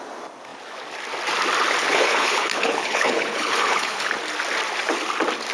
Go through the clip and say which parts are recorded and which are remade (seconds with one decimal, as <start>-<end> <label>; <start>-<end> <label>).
0.0-1.8 recorded; 1.8-4.1 remade; 4.1-5.5 recorded